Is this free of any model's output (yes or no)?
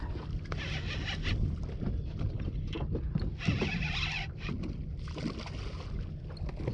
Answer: yes